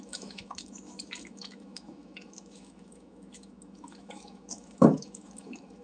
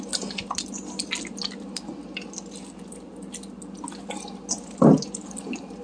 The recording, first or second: second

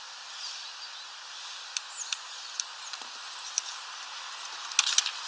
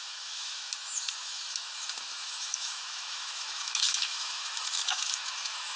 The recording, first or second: first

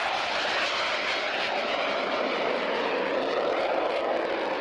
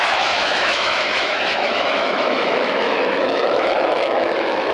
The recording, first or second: first